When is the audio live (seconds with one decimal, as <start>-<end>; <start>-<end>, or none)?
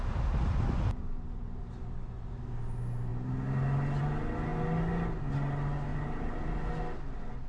0.0-1.0; 1.8-5.9; 6.4-7.5